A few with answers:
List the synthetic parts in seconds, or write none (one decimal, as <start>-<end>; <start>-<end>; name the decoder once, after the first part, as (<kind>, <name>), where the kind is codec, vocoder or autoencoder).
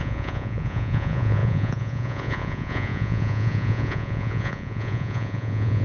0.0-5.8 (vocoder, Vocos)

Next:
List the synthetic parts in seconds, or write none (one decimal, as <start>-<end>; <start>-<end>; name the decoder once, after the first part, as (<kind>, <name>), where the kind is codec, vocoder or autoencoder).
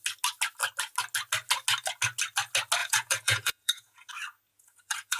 2.8-4.1 (vocoder, Vocos); 4.5-5.2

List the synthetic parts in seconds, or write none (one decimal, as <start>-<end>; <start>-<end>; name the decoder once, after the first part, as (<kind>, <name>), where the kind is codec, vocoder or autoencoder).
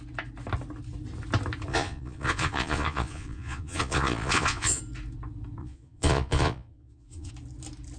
1.7-4.8 (vocoder, Vocos); 5.6-7.3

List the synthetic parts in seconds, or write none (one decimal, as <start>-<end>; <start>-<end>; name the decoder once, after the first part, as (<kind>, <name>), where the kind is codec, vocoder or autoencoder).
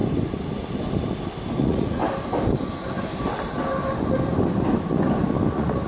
1.6-2.0 (vocoder, Vocos); 5.5-5.9